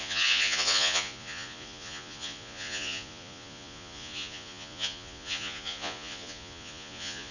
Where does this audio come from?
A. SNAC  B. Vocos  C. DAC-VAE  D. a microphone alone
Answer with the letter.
B